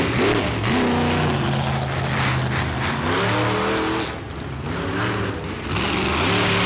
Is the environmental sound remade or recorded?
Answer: recorded